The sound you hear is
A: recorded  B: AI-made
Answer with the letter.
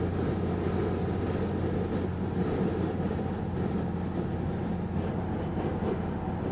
A